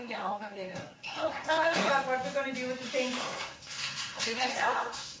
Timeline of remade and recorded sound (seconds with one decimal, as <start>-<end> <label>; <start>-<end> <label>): 0.0-1.9 remade; 1.9-3.2 recorded; 3.2-5.2 remade